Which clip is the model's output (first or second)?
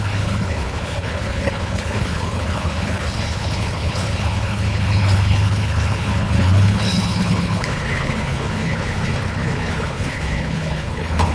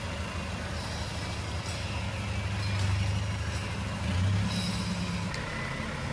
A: first